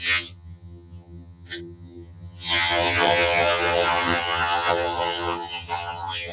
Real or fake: fake